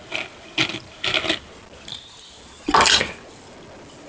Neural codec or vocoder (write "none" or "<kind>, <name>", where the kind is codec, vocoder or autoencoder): none